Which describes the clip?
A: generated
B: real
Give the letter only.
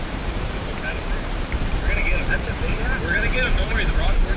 A